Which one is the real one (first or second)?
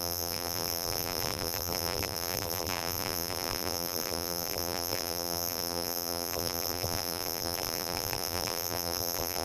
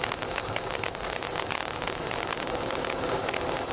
second